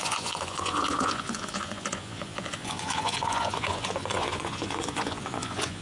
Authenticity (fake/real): fake